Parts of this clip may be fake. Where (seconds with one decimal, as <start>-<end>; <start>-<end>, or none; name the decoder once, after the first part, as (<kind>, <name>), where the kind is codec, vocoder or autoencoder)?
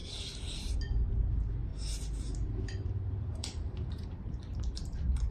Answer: 1.7-5.3 (vocoder, BigVGAN v2)